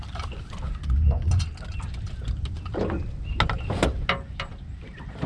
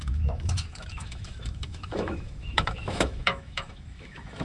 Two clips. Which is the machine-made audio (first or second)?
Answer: second